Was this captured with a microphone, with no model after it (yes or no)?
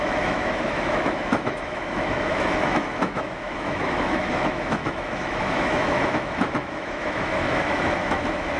no